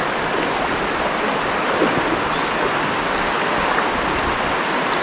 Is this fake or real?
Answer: real